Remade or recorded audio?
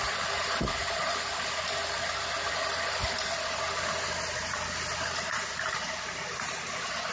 recorded